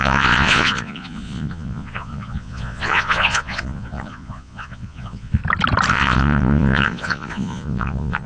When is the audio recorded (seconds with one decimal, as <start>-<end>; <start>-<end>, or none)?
5.4-5.9